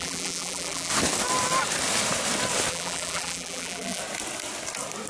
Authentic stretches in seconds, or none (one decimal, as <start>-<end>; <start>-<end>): 0.9-2.7; 4.0-5.1